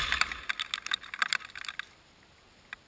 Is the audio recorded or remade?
recorded